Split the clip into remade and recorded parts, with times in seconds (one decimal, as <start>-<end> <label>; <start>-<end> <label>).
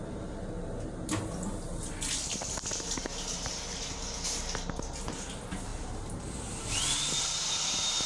0.0-8.1 recorded